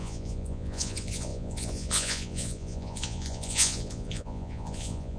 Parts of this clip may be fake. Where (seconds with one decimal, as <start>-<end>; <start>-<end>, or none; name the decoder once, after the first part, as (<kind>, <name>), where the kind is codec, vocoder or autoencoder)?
0.0-5.2 (vocoder, Vocos)

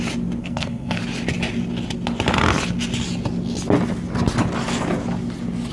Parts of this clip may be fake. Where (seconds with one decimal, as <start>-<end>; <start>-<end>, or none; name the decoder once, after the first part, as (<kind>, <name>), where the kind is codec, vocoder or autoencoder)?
0.4-1.0 (codec, SNAC)

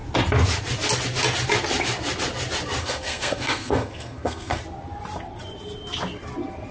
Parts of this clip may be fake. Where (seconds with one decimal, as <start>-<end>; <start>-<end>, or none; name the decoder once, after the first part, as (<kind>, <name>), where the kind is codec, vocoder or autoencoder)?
2.8-4.6 (codec, SNAC)

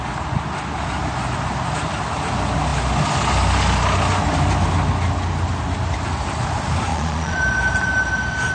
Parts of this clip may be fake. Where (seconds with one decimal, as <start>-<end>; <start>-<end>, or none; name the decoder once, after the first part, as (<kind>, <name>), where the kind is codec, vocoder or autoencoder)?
6.9-7.4 (vocoder, Vocos)

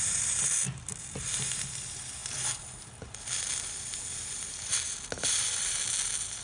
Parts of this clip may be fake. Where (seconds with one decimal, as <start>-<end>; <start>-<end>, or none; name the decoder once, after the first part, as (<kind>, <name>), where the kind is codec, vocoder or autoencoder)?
none

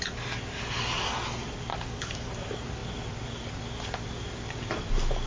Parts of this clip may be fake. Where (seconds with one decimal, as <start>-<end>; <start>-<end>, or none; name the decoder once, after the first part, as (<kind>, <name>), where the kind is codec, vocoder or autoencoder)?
1.7-2.3 (codec, DAC)